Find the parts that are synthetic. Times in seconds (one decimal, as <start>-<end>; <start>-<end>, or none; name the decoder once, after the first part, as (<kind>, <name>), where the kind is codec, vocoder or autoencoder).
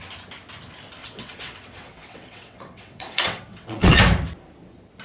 1.0-4.0 (vocoder, WaveNeXt)